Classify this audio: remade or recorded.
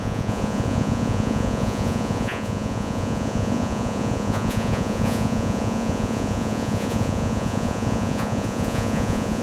remade